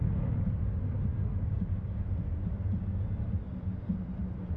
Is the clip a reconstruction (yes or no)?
no